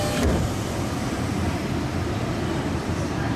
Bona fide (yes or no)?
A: no